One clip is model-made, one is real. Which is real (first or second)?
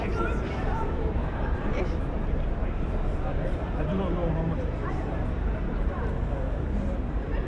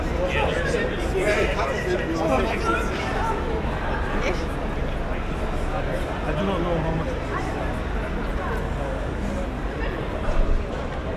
second